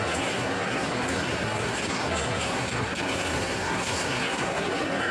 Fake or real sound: fake